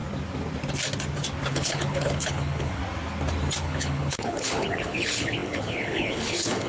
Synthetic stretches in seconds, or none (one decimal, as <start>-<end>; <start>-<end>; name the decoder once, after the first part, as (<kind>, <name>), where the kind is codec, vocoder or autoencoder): 1.5-2.8 (codec, HILCodec); 3.6-6.7